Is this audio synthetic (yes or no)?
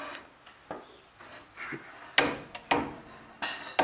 no